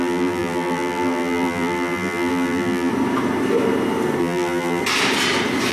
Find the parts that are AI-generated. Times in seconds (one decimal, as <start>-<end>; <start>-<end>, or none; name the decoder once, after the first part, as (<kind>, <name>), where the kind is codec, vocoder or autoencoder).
0.0-2.9 (vocoder, BigVGAN v2); 4.2-4.8